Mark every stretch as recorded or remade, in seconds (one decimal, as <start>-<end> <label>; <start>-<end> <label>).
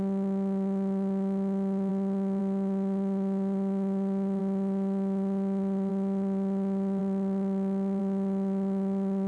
0.0-9.3 recorded